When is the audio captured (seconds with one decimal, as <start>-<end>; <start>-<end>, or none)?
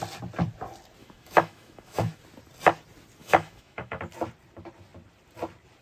0.0-1.0; 2.2-3.2; 4.0-5.8